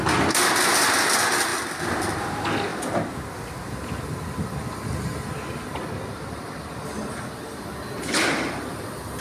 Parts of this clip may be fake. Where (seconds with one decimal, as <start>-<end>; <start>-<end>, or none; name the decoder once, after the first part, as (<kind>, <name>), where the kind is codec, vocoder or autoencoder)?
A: 1.5-2.3 (vocoder, BigVGAN v2); 2.7-5.3